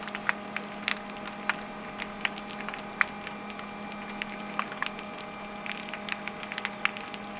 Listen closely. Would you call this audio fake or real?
real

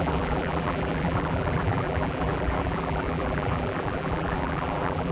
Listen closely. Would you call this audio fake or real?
fake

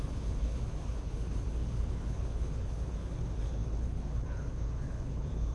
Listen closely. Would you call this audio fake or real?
fake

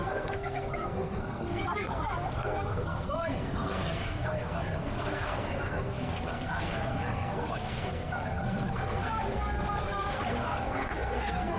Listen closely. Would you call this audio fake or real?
fake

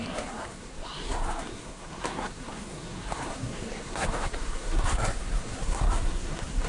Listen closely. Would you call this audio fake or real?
fake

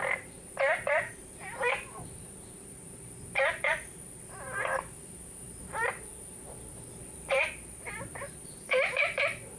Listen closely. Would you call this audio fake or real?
fake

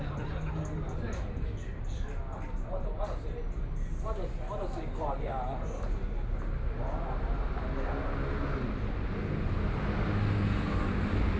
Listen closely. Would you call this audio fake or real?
real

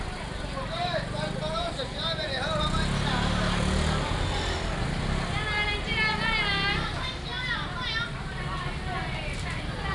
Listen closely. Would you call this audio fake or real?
real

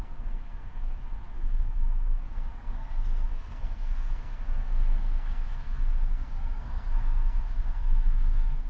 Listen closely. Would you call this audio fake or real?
fake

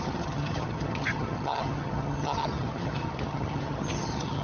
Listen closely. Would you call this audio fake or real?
fake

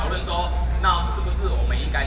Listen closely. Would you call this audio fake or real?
real